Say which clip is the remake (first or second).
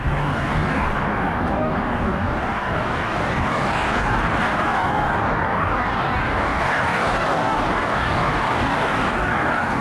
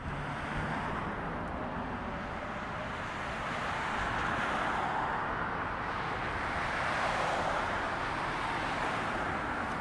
first